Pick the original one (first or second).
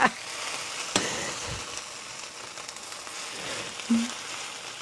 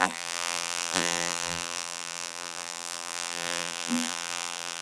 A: first